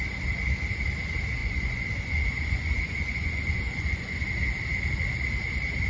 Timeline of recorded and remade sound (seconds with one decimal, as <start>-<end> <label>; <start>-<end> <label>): 0.0-1.4 recorded; 1.4-4.2 remade; 4.2-5.9 recorded

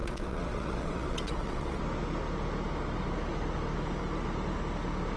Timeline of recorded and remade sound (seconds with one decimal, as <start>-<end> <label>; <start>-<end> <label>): 0.0-1.8 remade; 1.8-5.2 recorded

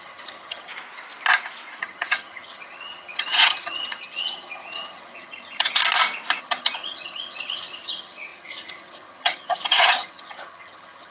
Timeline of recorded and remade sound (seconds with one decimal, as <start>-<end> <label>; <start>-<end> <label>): 0.0-0.7 remade; 0.7-1.8 recorded; 1.8-5.8 remade; 5.8-6.4 recorded; 6.4-11.1 remade

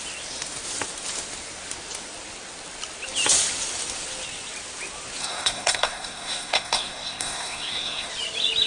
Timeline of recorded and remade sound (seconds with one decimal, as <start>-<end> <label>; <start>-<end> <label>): 0.0-5.2 recorded; 5.2-8.1 remade; 8.1-8.7 recorded

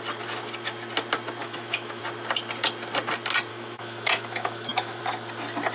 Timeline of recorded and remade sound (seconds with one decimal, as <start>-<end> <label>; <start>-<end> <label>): 0.0-1.4 recorded; 1.4-2.0 remade; 2.0-3.5 recorded; 3.5-5.0 remade; 5.0-5.7 recorded

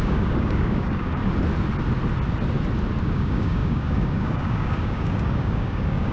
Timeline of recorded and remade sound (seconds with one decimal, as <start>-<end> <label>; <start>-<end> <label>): 0.0-1.2 remade; 1.2-3.0 recorded; 3.0-6.1 remade